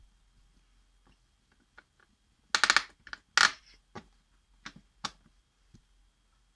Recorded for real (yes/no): yes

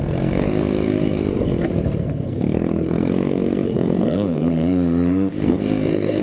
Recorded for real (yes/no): no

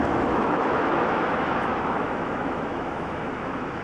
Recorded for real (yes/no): no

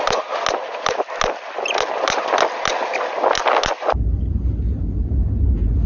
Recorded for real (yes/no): yes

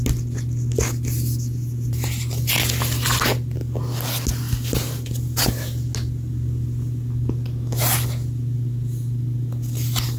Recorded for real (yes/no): yes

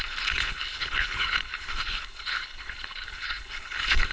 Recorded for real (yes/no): no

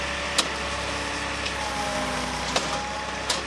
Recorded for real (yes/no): yes